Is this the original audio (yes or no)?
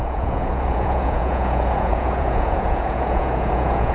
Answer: no